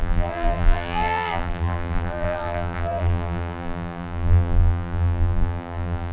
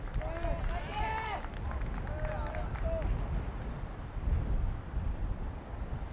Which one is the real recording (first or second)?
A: second